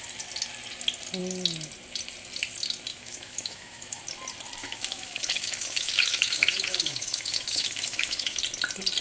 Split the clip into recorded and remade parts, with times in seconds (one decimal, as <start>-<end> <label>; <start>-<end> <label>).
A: 0.0-2.9 recorded; 2.9-4.0 remade; 4.0-4.6 recorded; 4.6-8.4 remade; 8.4-9.0 recorded